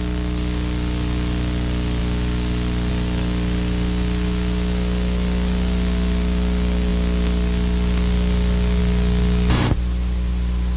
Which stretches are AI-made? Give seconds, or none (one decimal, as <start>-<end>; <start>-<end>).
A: none